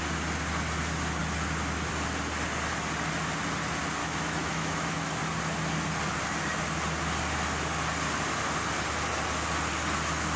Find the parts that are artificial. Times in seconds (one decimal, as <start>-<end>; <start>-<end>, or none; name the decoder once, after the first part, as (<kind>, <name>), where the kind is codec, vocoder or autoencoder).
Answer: 4.0-5.2 (autoencoder, DAC-VAE)